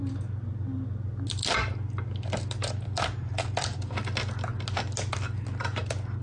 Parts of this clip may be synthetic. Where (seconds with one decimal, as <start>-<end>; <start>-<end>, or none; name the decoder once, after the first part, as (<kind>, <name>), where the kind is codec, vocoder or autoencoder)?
2.6-3.9 (vocoder, BigVGAN v2)